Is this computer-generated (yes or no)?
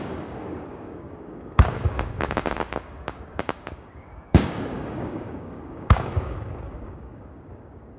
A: yes